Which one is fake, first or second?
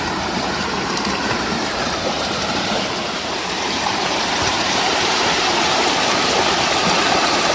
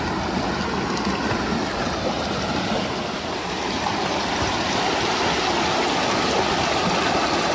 first